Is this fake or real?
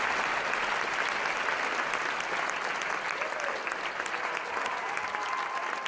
real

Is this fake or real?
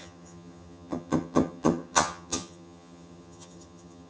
fake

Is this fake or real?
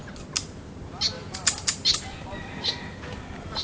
real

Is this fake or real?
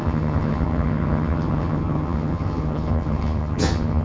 fake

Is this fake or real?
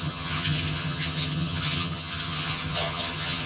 fake